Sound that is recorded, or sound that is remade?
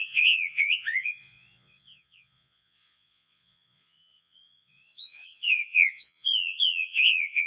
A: remade